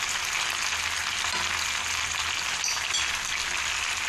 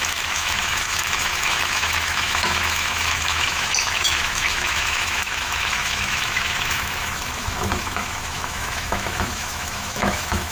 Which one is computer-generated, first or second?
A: second